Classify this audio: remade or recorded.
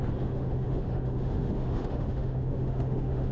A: remade